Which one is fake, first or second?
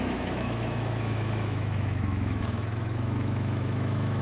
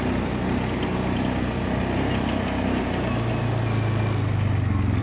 first